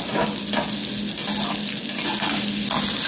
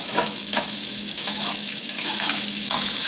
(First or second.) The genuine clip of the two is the first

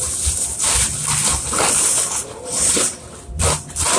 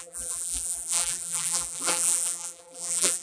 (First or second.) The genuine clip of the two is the first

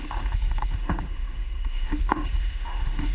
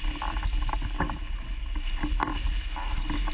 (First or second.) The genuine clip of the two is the second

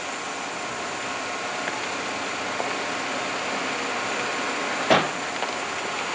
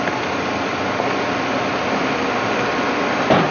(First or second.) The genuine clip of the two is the first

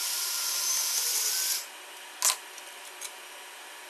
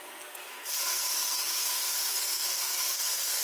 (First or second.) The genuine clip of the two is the first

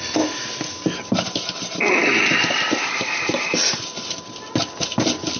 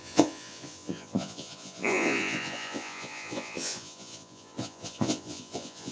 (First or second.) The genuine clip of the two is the first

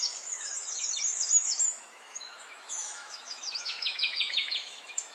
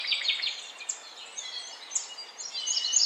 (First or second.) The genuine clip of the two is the second